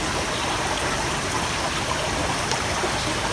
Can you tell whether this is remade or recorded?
recorded